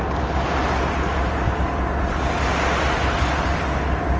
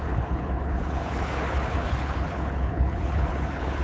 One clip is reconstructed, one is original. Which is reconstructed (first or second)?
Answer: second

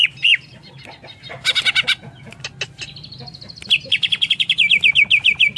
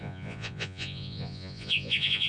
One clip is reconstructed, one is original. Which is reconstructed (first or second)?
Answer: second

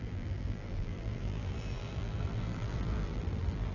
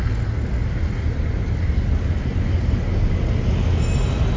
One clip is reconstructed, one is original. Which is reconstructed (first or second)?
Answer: first